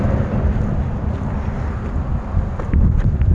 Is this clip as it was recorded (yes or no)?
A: yes